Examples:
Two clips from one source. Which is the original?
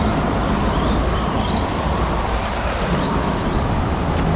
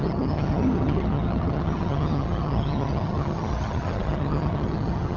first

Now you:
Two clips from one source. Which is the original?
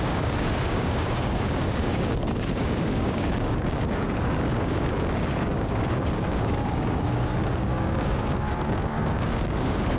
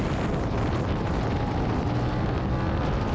second